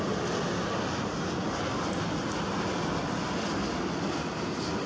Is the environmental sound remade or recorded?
recorded